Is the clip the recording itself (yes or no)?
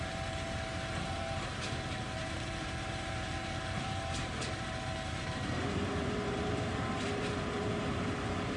no